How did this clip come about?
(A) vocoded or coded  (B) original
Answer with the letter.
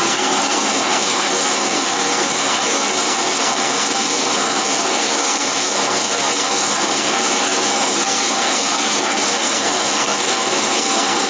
A